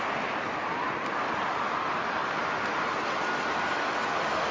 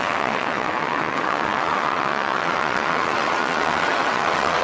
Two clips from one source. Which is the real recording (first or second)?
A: first